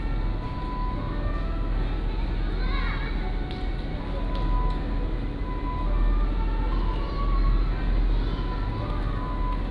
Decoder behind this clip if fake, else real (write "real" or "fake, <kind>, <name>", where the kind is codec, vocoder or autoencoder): real